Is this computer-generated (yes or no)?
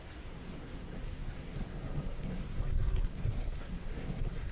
yes